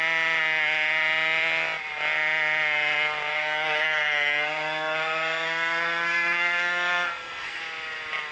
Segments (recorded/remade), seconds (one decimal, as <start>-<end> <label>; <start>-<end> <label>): 0.0-3.3 recorded; 3.3-7.6 remade; 7.6-8.3 recorded